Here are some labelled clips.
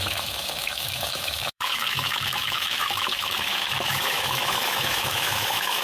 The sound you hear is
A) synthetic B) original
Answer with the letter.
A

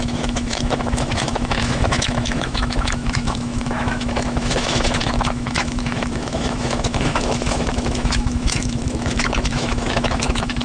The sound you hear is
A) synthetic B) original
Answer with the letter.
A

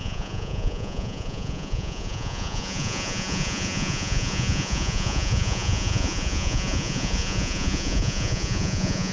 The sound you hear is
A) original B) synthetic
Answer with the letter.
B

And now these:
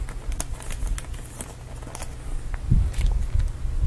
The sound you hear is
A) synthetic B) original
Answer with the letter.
B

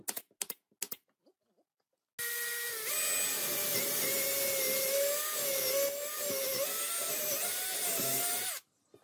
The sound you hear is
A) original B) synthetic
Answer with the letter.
A